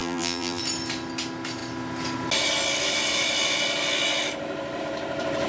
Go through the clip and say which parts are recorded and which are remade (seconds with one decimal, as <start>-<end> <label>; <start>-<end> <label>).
0.0-0.6 remade; 0.6-5.5 recorded